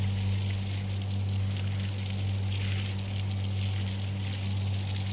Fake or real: real